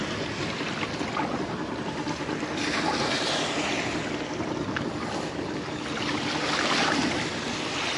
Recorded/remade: recorded